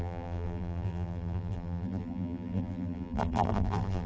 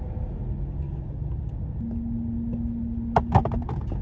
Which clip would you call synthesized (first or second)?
first